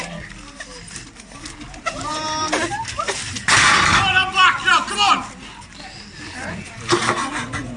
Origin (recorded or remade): remade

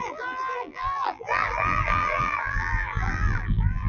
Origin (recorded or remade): remade